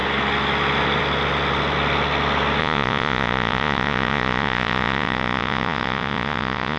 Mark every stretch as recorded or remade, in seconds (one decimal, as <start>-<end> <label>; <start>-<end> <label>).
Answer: 0.0-2.6 recorded; 2.6-6.8 remade